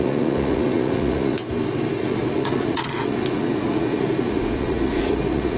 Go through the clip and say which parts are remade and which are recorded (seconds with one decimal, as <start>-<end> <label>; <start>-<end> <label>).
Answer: 0.0-1.4 remade; 1.4-2.0 recorded; 2.0-5.6 remade